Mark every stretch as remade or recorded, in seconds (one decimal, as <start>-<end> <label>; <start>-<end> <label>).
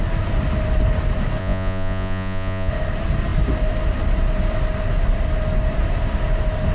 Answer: 0.0-1.4 recorded; 1.4-2.7 remade; 2.7-6.7 recorded